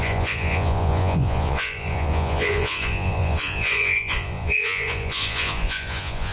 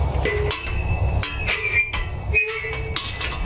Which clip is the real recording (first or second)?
second